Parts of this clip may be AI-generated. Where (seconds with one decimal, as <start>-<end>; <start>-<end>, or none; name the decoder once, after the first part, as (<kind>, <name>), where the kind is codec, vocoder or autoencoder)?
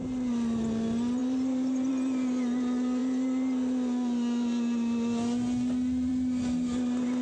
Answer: 1.2-1.9 (vocoder, BigVGAN v2)